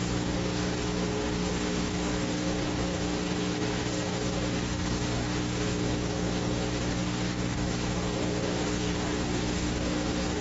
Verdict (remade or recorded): remade